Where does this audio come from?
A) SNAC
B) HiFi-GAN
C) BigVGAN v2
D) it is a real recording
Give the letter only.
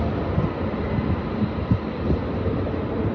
D